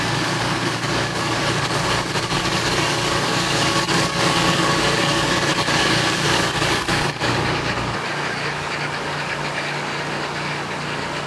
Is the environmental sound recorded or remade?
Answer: remade